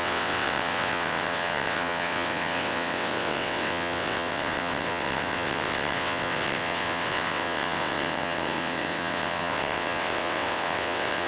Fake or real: fake